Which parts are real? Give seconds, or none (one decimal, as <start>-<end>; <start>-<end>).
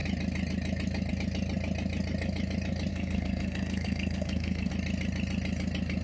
0.0-2.9; 4.7-6.0